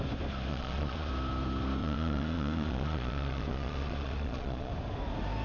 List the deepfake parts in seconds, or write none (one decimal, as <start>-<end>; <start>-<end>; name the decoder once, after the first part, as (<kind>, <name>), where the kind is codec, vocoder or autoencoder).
0.5-1.1 (vocoder, Vocos); 1.8-4.7